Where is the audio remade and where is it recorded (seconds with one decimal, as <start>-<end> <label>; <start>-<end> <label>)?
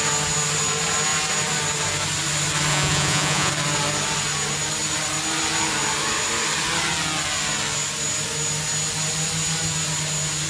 0.0-2.7 recorded; 2.7-3.5 remade; 3.5-10.5 recorded